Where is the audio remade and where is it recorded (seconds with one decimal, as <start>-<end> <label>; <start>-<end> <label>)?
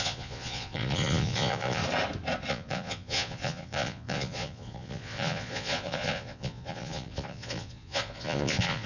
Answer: 0.0-1.8 remade; 1.8-2.5 recorded; 2.5-8.9 remade